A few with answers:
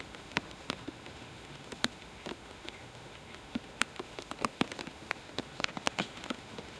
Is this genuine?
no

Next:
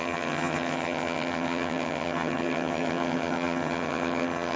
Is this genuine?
no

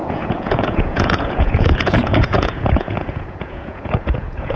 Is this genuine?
no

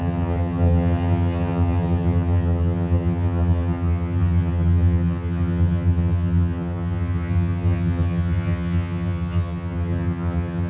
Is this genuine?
no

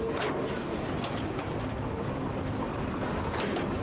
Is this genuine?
yes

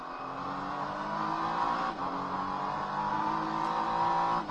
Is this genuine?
yes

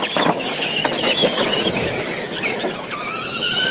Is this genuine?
no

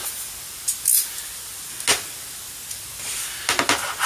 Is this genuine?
yes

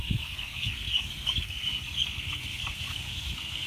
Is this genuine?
no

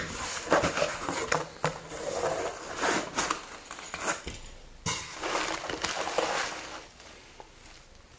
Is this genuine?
yes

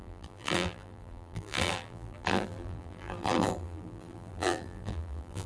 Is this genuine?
no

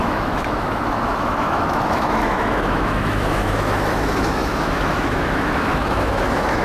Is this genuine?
no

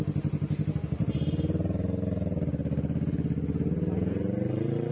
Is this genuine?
yes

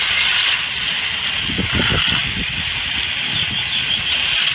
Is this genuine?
yes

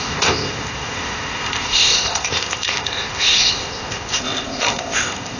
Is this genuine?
no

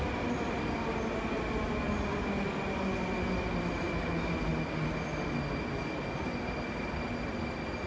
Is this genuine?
yes